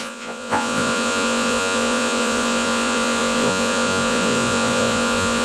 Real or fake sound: fake